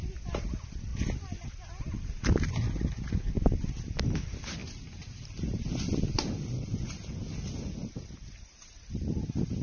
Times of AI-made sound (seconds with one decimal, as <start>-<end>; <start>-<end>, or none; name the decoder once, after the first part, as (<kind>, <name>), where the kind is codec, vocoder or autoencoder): none